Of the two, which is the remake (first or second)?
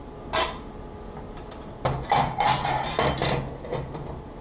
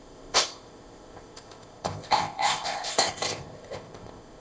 second